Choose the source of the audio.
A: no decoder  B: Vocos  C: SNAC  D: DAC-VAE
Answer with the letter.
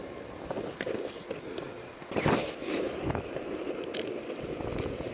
A